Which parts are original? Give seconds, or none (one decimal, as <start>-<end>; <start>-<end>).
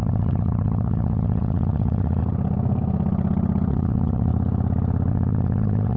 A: 2.2-3.7; 4.3-5.1